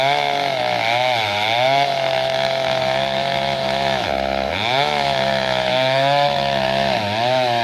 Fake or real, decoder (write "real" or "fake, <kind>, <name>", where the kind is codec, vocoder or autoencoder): fake, autoencoder, DAC-VAE